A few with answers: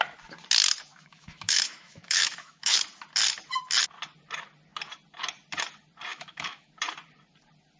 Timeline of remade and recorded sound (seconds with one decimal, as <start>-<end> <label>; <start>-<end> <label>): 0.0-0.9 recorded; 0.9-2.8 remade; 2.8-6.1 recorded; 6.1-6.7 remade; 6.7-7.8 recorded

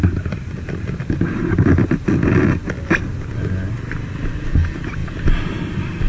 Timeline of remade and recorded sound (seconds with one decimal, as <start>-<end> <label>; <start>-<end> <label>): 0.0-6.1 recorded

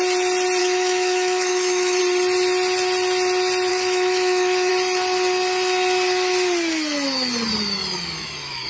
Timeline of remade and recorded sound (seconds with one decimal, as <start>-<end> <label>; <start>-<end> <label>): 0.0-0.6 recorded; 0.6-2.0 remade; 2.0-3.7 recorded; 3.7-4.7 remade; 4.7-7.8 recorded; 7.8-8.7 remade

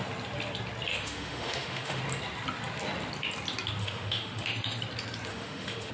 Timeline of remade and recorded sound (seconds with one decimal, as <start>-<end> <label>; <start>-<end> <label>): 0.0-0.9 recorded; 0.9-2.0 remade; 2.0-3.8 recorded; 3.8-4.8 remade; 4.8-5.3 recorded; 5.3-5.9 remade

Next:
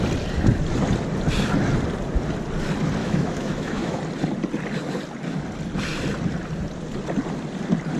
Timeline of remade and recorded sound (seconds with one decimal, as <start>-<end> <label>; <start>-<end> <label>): 0.0-3.0 recorded; 3.0-4.0 remade; 4.0-8.0 recorded

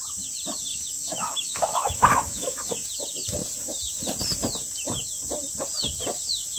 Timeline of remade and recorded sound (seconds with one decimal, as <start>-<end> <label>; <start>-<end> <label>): 0.0-0.7 recorded; 0.7-2.7 remade; 2.7-6.6 recorded

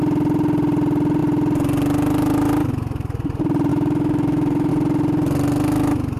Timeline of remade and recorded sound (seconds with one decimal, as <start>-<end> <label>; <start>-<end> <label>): 0.0-3.7 recorded; 3.7-4.7 remade; 4.7-6.2 recorded